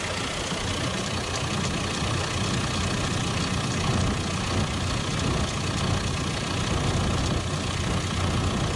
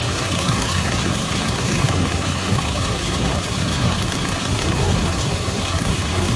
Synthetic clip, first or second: second